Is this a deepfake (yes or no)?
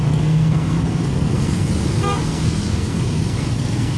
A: yes